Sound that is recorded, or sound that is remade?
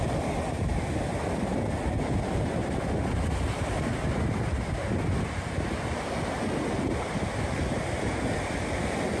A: recorded